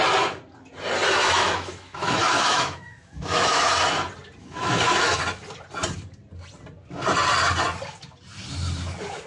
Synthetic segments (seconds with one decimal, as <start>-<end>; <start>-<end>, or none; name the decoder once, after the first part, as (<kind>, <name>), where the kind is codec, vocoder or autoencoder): 1.2-3.7 (autoencoder, DAC-VAE); 4.4-5.2